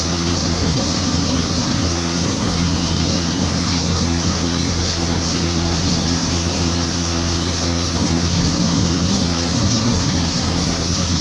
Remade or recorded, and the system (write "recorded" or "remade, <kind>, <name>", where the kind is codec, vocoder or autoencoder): remade, codec, SNAC